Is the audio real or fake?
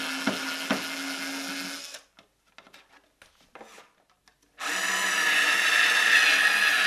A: real